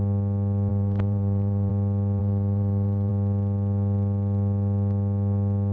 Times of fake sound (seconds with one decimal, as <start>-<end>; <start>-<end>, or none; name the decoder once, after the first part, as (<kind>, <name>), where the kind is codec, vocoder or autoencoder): 0.7-1.7 (vocoder, BigVGAN v2); 2.2-3.1